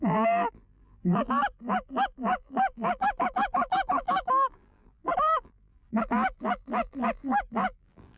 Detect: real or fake fake